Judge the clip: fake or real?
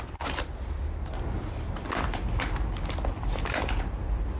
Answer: real